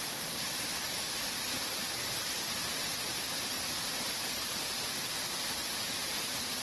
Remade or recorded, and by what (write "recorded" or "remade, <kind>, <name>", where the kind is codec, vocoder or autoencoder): recorded